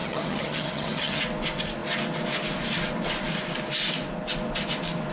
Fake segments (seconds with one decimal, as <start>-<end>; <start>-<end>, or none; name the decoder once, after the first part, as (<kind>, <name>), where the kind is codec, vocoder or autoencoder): 0.0-1.2 (vocoder, HiFi-GAN)